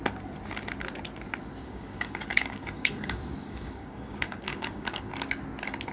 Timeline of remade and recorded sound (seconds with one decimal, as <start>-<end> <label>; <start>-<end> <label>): 0.0-1.6 recorded; 1.6-5.1 remade; 5.1-5.9 recorded